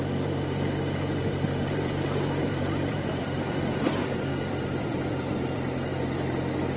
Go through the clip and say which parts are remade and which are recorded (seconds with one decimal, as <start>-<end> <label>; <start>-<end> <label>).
0.0-1.2 recorded; 1.2-3.1 remade; 3.1-6.8 recorded